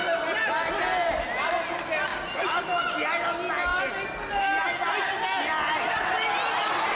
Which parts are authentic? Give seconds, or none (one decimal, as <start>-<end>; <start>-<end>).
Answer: 0.0-7.0